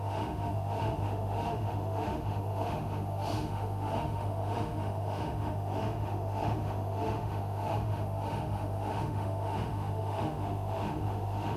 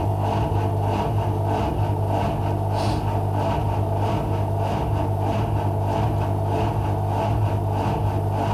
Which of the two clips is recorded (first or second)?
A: second